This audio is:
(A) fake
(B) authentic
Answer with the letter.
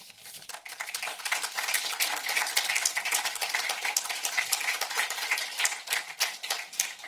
A